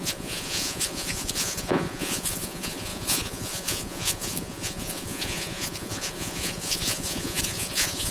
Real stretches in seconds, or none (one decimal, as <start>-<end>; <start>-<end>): none